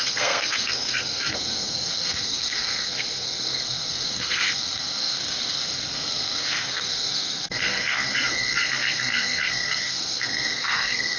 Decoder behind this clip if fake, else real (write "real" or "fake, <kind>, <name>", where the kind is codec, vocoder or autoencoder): fake, codec, SNAC